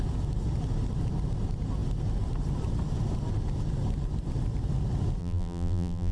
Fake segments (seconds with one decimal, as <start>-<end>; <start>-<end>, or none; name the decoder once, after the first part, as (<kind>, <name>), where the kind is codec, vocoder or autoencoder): 5.2-6.1 (vocoder, BigVGAN v2)